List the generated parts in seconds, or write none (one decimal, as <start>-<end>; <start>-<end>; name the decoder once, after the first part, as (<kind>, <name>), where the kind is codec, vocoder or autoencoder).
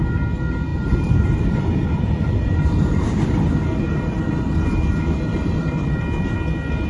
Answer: 0.7-1.5 (vocoder, BigVGAN v2); 1.9-6.0